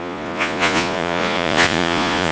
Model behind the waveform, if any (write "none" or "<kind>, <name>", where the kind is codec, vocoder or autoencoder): vocoder, Vocos